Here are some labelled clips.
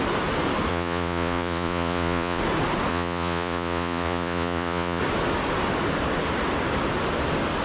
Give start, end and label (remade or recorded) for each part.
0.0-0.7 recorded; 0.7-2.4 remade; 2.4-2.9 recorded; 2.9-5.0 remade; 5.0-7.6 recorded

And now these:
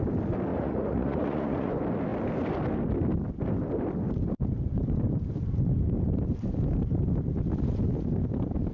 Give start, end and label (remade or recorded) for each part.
0.0-0.5 recorded; 0.5-1.7 remade; 1.7-8.7 recorded

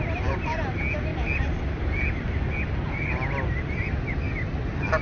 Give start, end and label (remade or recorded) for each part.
0.0-5.0 recorded